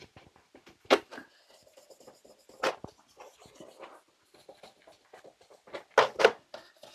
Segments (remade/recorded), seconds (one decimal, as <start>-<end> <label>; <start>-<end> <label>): 0.0-6.9 recorded